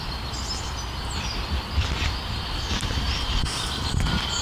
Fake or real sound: real